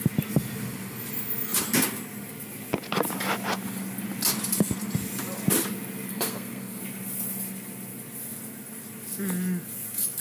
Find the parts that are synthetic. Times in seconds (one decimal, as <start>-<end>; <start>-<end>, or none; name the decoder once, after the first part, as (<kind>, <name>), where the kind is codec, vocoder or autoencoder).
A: 6.1-6.8 (codec, SNAC)

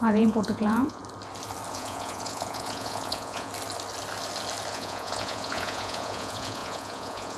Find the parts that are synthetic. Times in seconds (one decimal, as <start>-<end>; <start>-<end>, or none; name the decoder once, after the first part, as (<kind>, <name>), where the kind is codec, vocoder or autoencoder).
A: 0.0-1.0 (vocoder, Vocos); 1.7-3.5; 4.7-7.4

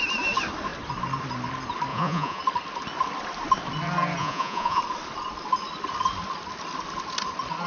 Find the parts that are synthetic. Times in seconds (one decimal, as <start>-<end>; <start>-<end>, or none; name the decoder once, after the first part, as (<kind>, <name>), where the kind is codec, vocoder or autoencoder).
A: 1.9-2.4 (vocoder, Vocos); 4.2-4.8

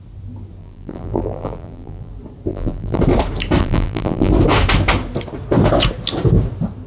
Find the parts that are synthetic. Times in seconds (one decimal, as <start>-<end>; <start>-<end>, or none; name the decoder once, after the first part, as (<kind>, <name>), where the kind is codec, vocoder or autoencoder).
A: 0.6-2.1 (vocoder, BigVGAN v2); 2.5-3.0; 3.6-4.3

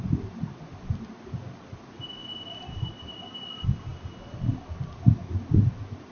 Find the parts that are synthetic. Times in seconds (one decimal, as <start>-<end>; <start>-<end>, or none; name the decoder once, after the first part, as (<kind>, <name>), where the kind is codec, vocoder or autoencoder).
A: none

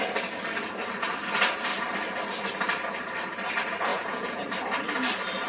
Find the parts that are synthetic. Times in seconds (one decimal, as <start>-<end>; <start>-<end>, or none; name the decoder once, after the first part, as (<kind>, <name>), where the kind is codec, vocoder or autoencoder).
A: 3.9-4.4 (vocoder, Vocos)